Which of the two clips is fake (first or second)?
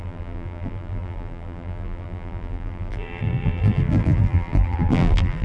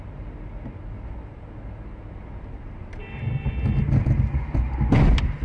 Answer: first